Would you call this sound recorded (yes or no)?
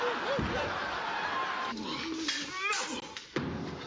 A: yes